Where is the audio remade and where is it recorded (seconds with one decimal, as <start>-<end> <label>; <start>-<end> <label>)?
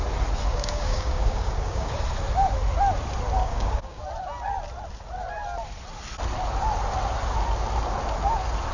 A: 0.0-0.5 recorded; 0.5-1.9 remade; 1.9-3.4 recorded; 3.4-4.0 remade; 4.0-8.7 recorded